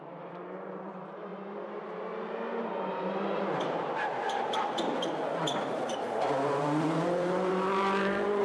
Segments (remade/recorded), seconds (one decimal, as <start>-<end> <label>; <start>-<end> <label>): 0.0-1.3 remade; 1.3-3.1 recorded; 3.1-8.4 remade